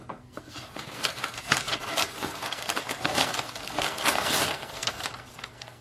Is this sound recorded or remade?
remade